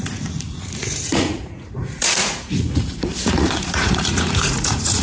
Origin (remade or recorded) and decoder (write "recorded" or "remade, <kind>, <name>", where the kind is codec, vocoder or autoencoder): remade, vocoder, Vocos